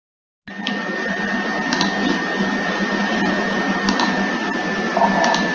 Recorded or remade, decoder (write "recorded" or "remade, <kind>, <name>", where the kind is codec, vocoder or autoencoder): recorded